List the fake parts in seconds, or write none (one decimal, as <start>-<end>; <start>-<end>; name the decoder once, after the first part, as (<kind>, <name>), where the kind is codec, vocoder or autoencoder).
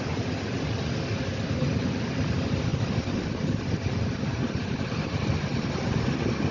2.7-3.9 (vocoder, BigVGAN v2); 5.5-6.5